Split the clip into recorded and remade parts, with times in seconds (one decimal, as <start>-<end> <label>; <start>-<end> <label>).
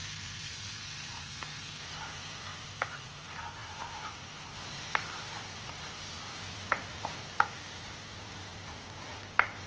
0.0-1.8 remade; 1.8-9.7 recorded